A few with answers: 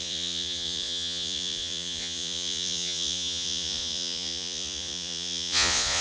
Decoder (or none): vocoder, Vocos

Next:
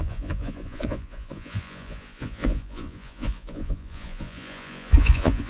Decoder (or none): vocoder, Vocos